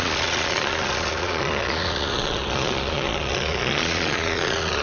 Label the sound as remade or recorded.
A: remade